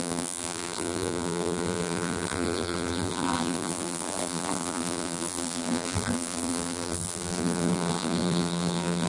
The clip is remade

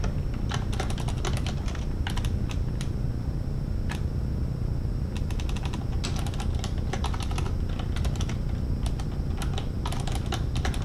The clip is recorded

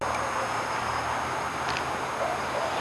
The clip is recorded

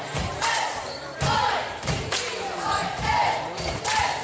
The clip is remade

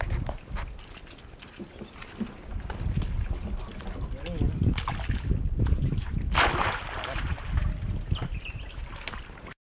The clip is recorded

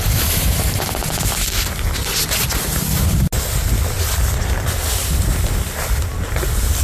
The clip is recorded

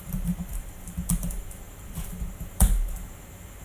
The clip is remade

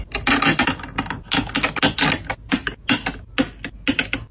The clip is recorded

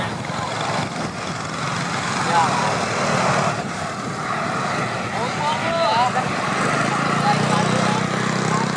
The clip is recorded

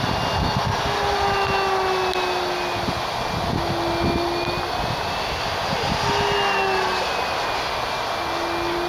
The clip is recorded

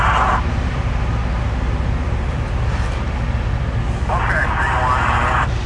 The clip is recorded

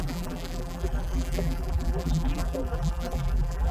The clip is remade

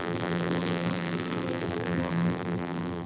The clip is remade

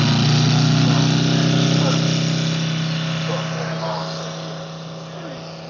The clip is recorded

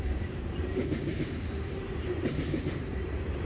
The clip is remade